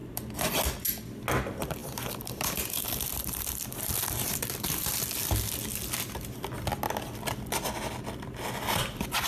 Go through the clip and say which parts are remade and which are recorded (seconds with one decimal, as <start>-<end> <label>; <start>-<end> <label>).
0.0-1.8 recorded; 1.8-5.1 remade; 5.1-9.3 recorded